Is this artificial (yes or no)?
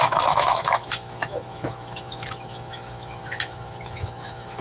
yes